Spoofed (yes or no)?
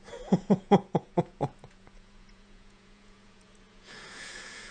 yes